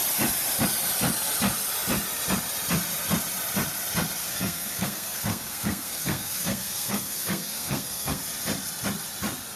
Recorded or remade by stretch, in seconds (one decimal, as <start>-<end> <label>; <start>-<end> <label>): 0.0-4.2 recorded; 4.2-8.2 remade; 8.2-9.6 recorded